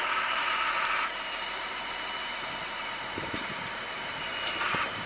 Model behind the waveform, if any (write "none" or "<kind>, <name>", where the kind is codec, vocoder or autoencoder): vocoder, BigVGAN v2